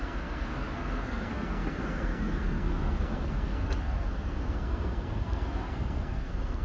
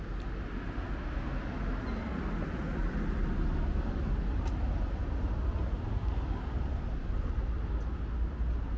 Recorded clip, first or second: second